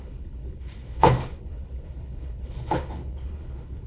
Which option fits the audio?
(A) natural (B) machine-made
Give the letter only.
B